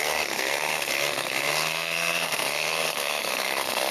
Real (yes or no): no